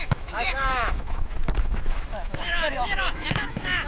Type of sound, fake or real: fake